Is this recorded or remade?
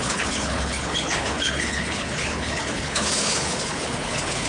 remade